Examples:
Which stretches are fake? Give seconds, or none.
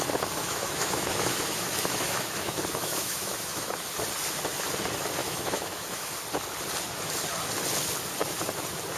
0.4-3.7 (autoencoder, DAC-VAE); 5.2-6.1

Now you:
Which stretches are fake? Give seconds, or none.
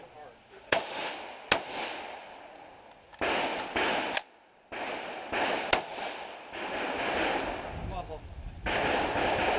0.5-1.1 (autoencoder, DAC-VAE)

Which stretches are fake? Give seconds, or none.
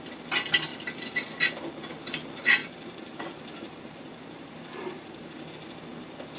2.6-5.5 (vocoder, BigVGAN v2)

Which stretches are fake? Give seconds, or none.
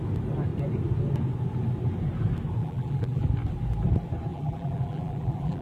2.6-3.3 (vocoder, BigVGAN v2); 4.3-5.6